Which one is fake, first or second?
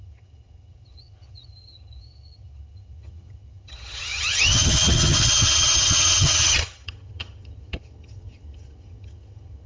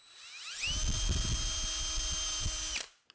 first